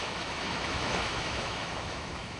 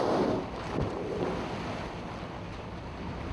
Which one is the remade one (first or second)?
first